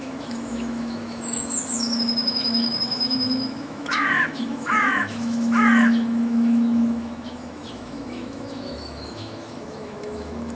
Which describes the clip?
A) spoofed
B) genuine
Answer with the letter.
A